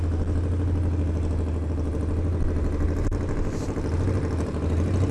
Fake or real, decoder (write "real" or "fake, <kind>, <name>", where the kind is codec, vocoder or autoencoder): real